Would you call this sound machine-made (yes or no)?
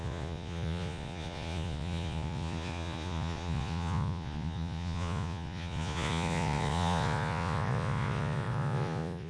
yes